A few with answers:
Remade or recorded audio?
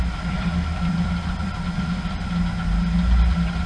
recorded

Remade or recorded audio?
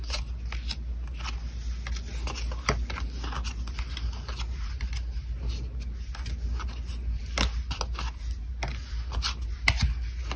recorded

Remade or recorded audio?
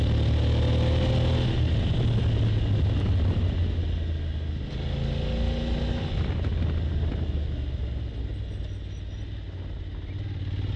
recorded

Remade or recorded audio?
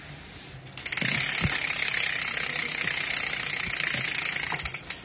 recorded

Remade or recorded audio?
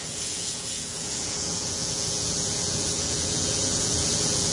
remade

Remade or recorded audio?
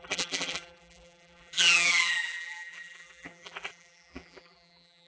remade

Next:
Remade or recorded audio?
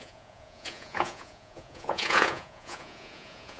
remade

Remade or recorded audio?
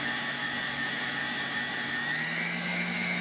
remade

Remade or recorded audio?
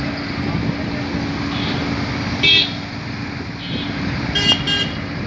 recorded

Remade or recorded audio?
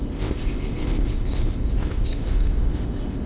remade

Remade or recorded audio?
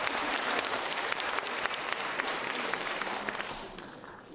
remade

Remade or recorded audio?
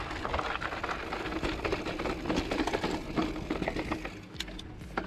recorded